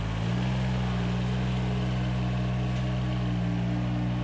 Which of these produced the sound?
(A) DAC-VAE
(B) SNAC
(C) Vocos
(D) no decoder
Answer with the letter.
D